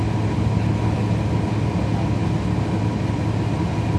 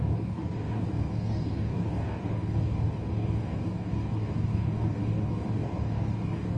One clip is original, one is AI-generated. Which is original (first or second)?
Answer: first